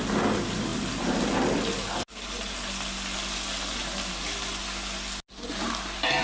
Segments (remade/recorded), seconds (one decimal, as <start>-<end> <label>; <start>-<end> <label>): 0.0-6.2 recorded

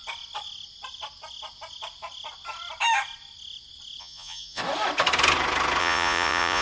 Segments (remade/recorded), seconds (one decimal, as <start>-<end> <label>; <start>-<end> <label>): 0.0-4.0 recorded; 4.0-4.6 remade; 4.6-5.8 recorded; 5.8-6.6 remade

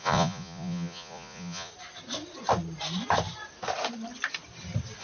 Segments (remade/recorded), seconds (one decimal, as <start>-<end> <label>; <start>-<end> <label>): 0.0-1.7 remade; 1.7-5.0 recorded

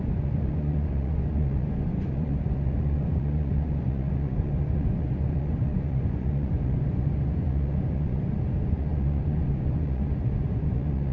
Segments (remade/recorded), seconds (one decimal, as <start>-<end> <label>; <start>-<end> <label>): 0.0-11.1 remade

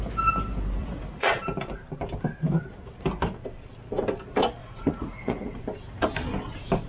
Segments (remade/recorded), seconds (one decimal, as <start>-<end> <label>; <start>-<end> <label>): 0.0-0.8 recorded; 0.8-1.4 remade; 1.4-4.6 recorded; 4.6-5.6 remade; 5.6-6.9 recorded

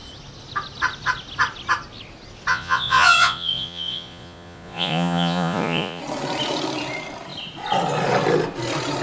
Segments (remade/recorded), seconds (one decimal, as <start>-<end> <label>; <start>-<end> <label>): 0.0-2.5 recorded; 2.5-6.0 remade; 6.0-9.0 recorded

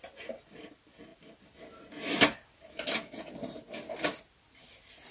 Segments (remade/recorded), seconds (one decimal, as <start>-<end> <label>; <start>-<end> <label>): 0.0-5.1 recorded

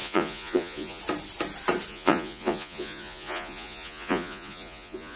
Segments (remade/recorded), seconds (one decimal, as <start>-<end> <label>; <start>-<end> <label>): 0.0-1.0 remade; 1.0-1.9 recorded; 1.9-5.2 remade